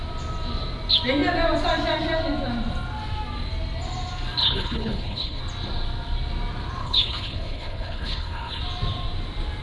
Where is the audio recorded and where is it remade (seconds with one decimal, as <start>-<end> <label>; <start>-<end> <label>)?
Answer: 0.0-4.4 recorded; 4.4-5.4 remade; 5.4-6.8 recorded; 6.8-8.6 remade; 8.6-9.6 recorded